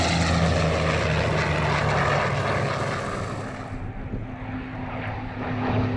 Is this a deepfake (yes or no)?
no